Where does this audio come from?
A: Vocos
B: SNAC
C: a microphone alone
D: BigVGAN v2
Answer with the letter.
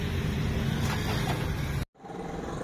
C